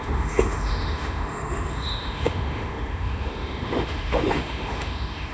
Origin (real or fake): fake